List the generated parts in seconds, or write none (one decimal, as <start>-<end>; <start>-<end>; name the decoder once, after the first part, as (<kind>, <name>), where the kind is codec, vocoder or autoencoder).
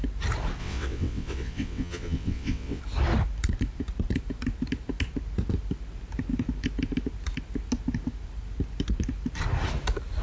0.6-2.8 (vocoder, WaveNeXt)